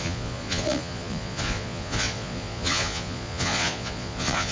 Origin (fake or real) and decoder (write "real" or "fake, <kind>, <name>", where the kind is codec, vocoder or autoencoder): fake, vocoder, Vocos